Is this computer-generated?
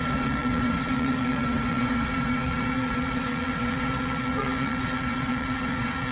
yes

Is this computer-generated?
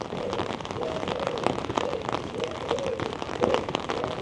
yes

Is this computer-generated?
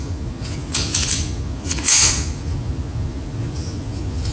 yes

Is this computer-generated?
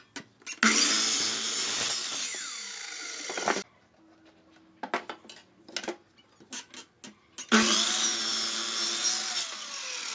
no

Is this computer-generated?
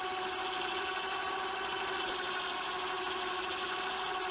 no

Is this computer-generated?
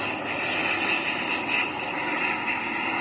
no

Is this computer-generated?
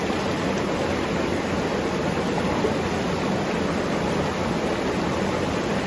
no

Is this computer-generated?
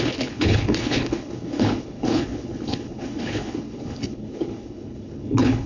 yes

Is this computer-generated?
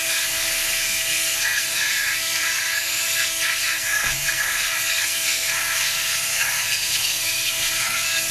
yes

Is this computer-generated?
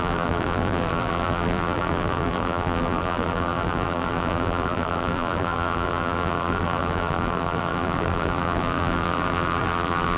yes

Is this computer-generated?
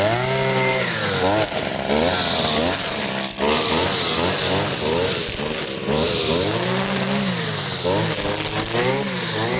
no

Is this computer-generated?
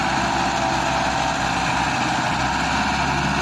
no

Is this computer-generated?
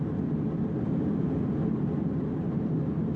no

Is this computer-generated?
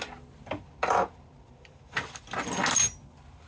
no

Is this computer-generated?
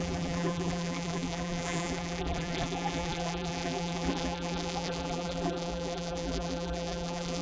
yes